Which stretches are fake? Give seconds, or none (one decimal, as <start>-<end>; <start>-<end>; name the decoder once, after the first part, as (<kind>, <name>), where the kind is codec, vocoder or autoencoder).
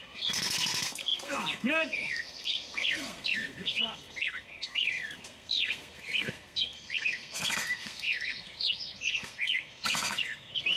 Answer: 0.0-10.8 (codec, SNAC)